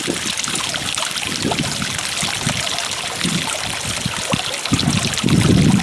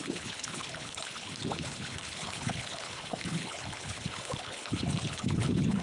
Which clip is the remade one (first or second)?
second